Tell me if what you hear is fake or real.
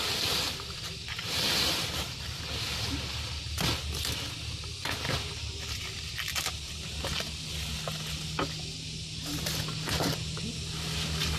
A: real